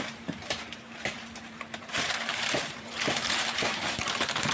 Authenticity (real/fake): fake